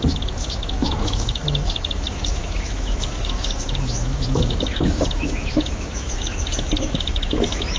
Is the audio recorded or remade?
remade